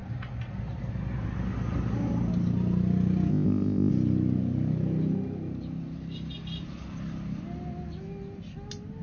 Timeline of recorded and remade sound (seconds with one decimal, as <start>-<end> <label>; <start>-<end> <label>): 0.0-3.3 recorded; 3.3-3.9 remade; 3.9-9.0 recorded